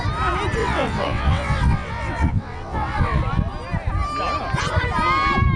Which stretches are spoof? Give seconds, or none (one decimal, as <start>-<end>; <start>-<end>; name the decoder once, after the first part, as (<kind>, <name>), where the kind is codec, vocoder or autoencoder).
0.6-3.2 (vocoder, WaveNeXt)